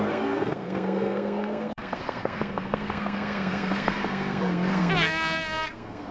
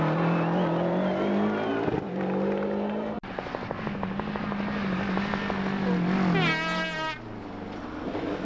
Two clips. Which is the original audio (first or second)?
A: second